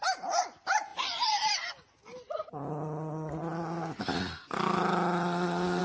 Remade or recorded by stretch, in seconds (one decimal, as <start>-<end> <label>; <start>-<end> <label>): 0.0-0.9 recorded; 0.9-1.7 remade; 1.7-5.8 recorded